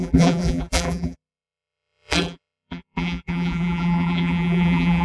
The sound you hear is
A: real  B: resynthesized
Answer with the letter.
B